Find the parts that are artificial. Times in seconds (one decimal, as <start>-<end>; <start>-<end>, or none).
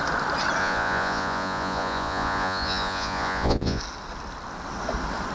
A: 0.6-3.8